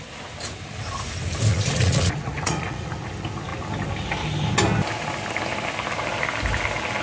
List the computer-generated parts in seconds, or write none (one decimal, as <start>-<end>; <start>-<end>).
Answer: 1.5-2.9